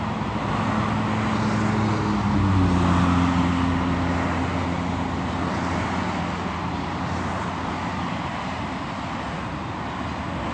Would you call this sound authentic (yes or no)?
yes